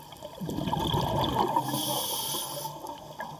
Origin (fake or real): real